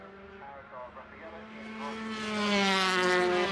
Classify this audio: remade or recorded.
recorded